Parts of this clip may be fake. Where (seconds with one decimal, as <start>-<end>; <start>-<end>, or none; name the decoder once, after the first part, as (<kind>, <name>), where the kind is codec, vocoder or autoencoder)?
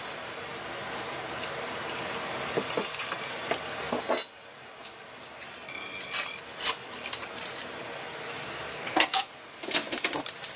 8.7-9.3 (codec, SNAC)